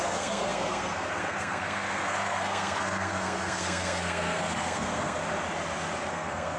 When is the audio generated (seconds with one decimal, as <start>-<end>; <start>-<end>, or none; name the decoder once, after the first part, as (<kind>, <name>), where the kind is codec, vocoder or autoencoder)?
0.0-5.2 (codec, SNAC); 6.1-6.6